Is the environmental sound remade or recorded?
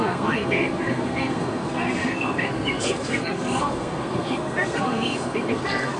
remade